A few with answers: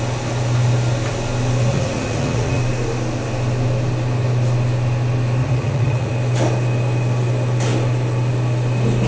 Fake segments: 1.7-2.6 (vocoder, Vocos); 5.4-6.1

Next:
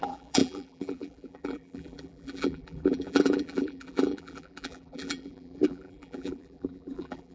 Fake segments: 0.0-7.3 (vocoder, BigVGAN v2)

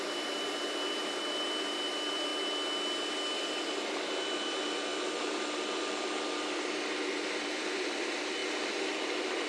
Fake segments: 0.0-2.3 (vocoder, BigVGAN v2); 3.1-4.9; 6.4-9.5